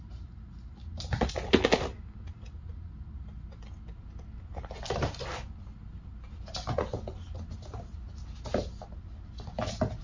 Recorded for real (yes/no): yes